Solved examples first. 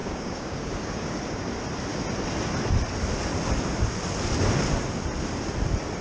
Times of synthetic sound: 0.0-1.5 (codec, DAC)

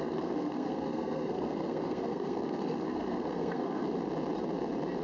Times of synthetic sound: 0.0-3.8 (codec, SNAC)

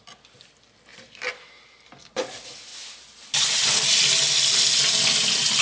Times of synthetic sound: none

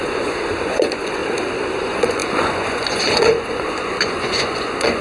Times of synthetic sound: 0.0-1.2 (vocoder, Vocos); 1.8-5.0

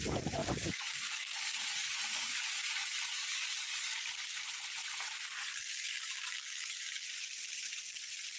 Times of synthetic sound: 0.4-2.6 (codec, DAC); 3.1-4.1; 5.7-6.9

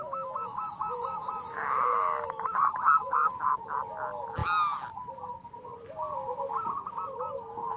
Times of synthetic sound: 0.0-3.3 (autoencoder, DAC-VAE)

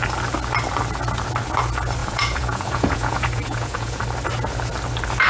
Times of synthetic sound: 2.0-4.0 (vocoder, Vocos)